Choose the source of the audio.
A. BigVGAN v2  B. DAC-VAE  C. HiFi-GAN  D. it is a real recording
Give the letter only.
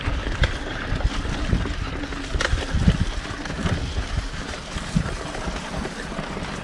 D